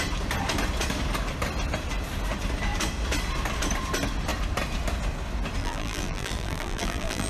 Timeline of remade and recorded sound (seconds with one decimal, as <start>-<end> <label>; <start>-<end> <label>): 0.0-5.6 recorded; 5.6-7.3 remade

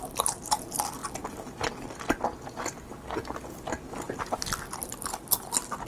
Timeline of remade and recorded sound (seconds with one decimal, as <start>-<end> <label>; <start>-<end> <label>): 0.0-5.9 recorded

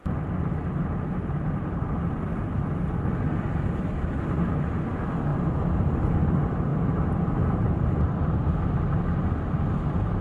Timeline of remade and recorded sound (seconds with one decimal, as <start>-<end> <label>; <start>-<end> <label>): 0.0-5.3 recorded; 5.3-5.9 remade; 5.9-6.7 recorded; 6.7-8.3 remade; 8.3-10.2 recorded

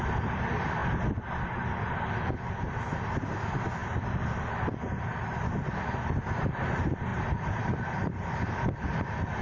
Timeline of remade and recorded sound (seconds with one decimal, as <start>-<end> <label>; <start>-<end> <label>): 0.0-7.1 recorded; 7.1-8.3 remade; 8.3-9.4 recorded

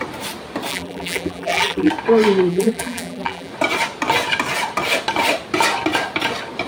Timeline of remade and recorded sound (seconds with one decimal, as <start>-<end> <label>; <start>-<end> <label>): 0.0-0.7 recorded; 0.7-1.9 remade; 1.9-2.5 recorded; 2.5-3.5 remade; 3.5-6.7 recorded

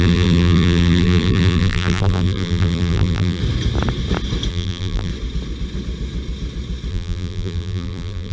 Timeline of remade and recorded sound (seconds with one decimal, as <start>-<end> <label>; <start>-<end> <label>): 0.0-3.4 remade; 3.4-4.5 recorded; 4.5-5.1 remade; 5.1-6.9 recorded; 6.9-8.3 remade

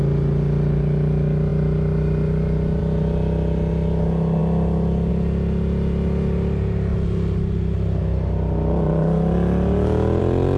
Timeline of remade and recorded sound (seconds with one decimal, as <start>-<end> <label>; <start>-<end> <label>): 0.0-10.6 recorded

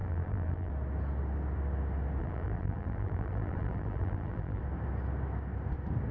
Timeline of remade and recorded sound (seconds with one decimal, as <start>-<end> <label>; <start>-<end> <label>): 0.0-0.7 remade; 0.7-2.2 recorded; 2.2-4.6 remade; 4.6-6.1 recorded